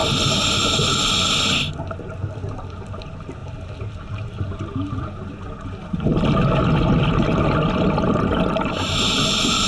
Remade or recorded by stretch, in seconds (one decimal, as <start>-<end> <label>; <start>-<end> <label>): 0.0-9.7 recorded